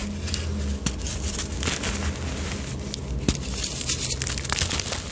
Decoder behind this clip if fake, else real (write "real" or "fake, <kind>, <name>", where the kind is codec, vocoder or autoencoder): real